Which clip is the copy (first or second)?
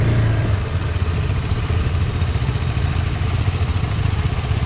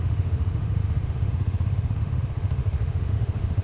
second